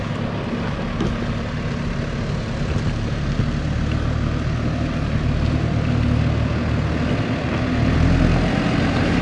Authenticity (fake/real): real